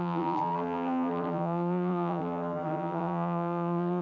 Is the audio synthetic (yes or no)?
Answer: yes